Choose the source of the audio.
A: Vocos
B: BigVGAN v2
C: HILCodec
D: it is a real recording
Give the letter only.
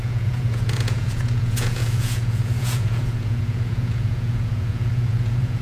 A